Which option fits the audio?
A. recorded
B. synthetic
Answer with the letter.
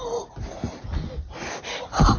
A